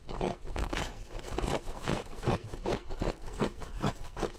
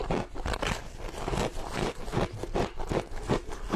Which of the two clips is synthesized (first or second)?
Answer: first